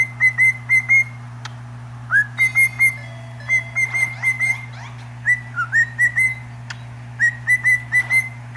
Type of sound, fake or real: real